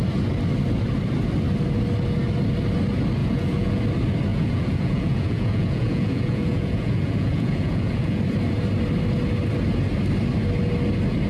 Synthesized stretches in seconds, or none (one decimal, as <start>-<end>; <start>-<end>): 3.2-3.8; 4.3-8.2